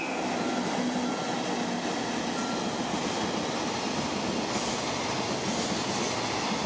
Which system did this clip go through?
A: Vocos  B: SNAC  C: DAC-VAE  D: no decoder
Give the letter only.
D